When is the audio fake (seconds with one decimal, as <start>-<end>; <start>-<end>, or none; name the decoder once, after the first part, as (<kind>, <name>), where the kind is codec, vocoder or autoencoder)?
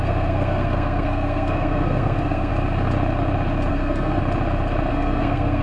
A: 0.0-2.5 (codec, SNAC); 3.7-4.2; 4.9-5.6